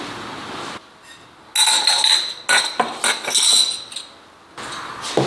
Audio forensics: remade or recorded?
recorded